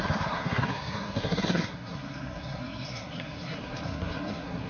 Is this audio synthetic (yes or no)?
yes